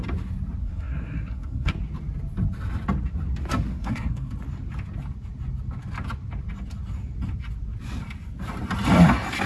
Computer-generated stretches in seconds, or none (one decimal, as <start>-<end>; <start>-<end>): 0.6-1.7; 3.7-4.3